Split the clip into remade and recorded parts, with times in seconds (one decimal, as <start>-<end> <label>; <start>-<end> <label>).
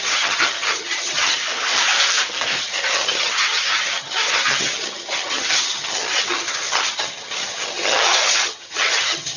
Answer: 0.0-1.4 remade; 1.4-2.6 recorded; 2.6-9.4 remade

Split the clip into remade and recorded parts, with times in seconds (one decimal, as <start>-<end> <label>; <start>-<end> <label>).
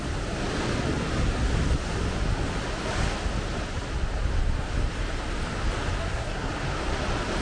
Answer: 0.0-6.0 recorded; 6.0-6.5 remade; 6.5-7.4 recorded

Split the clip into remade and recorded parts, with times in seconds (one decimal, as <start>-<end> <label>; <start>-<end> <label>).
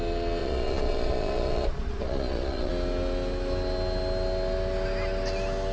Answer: 0.0-0.4 recorded; 0.4-2.7 remade; 2.7-5.7 recorded